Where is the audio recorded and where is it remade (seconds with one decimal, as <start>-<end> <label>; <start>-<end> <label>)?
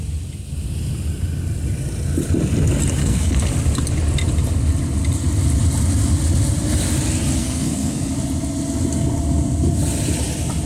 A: 0.0-3.0 recorded; 3.0-3.5 remade; 3.5-7.4 recorded; 7.4-8.1 remade; 8.1-10.7 recorded